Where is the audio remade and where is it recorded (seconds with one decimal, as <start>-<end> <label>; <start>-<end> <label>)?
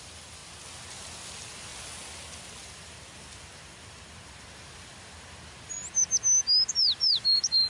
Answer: 0.0-0.4 remade; 0.4-0.9 recorded; 0.9-1.7 remade; 1.7-2.6 recorded; 2.6-6.0 remade; 6.0-6.7 recorded; 6.7-7.7 remade